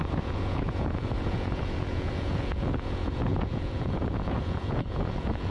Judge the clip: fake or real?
fake